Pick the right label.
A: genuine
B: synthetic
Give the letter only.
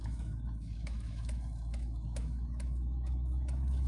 B